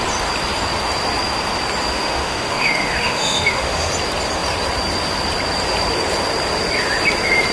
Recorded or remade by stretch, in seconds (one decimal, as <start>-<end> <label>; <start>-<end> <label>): 0.0-1.9 recorded; 1.9-3.9 remade; 3.9-7.5 recorded